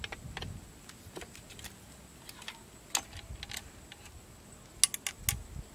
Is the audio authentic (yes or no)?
yes